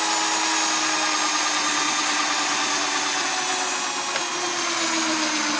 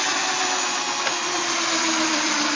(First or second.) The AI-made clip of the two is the second